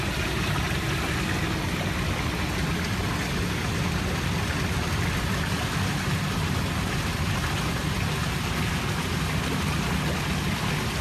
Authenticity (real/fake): real